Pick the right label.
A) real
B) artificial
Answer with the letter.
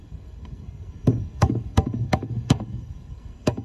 B